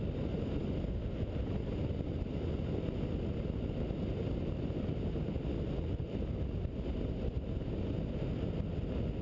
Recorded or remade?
recorded